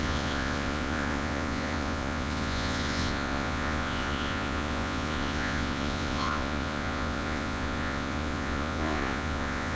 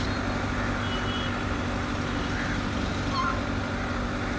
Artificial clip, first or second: first